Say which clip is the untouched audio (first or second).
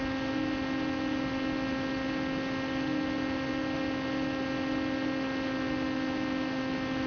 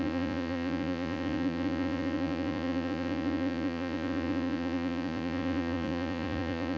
first